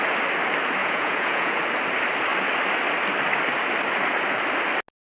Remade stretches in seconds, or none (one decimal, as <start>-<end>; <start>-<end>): 0.8-1.6